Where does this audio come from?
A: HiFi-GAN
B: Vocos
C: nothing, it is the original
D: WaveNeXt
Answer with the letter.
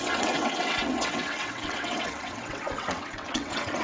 D